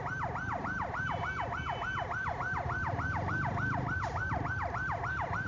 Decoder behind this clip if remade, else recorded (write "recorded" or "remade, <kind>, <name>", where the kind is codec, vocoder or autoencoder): remade, vocoder, BigVGAN v2